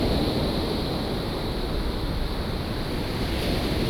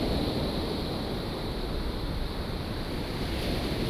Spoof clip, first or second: second